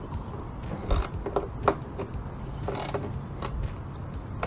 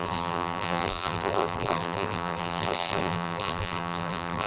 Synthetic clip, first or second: second